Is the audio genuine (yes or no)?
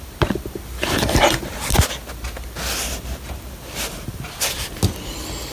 yes